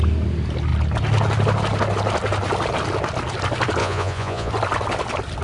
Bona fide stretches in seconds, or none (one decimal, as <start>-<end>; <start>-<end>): 0.0-3.8; 4.5-5.4